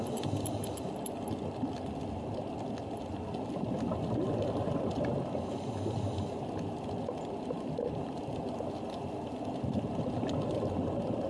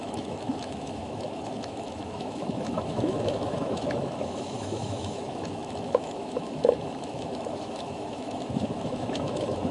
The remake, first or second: second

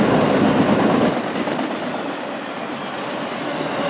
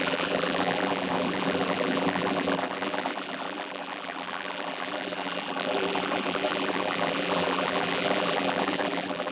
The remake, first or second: second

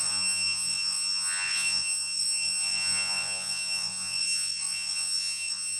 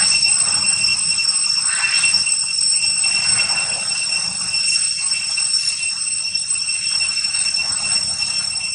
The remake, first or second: first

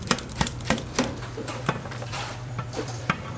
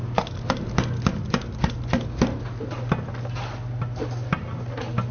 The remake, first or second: first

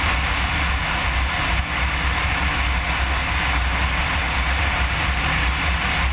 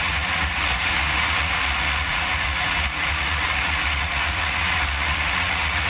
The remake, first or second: second